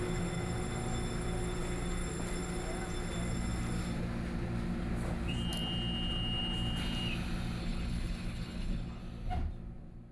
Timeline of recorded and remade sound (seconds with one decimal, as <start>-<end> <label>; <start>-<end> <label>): 0.0-7.6 recorded; 7.6-9.0 remade; 9.0-10.1 recorded